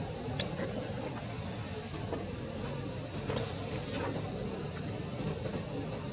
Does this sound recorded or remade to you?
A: recorded